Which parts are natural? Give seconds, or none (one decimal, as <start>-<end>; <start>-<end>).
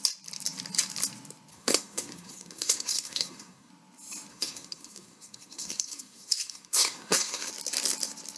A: 0.0-1.5; 3.7-4.3; 7.5-8.4